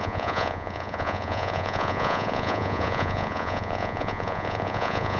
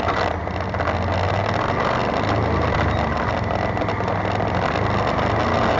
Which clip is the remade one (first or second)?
first